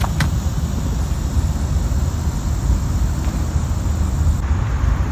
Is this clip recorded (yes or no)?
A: yes